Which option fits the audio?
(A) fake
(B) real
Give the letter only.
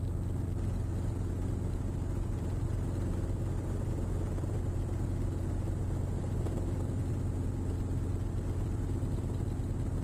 B